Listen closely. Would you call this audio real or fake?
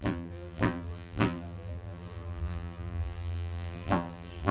fake